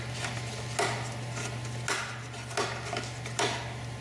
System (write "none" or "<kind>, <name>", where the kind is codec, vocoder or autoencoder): none